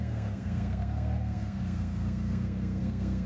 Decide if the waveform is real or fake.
fake